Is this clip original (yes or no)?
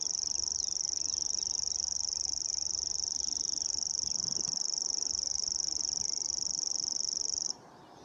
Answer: yes